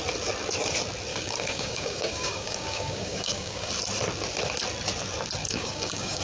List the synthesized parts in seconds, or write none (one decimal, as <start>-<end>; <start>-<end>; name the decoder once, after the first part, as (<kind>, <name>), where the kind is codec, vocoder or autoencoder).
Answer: 1.1-3.7 (codec, DAC); 5.4-6.2